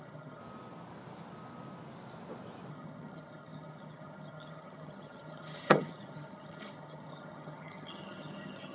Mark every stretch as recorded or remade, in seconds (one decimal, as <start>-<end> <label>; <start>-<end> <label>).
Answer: 0.0-0.4 remade; 0.4-2.7 recorded; 2.7-8.7 remade